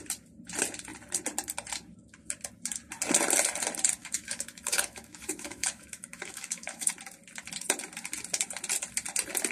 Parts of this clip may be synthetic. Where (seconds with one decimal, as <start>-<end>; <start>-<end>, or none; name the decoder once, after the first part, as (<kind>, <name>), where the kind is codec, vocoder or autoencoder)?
4.0-6.9 (autoencoder, DAC-VAE)